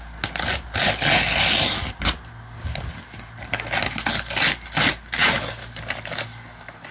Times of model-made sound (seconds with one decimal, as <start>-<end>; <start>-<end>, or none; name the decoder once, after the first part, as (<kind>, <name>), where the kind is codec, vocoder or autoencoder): 5.6-6.9 (codec, DAC)